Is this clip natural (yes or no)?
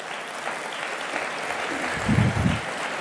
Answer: yes